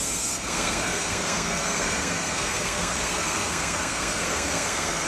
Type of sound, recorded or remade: remade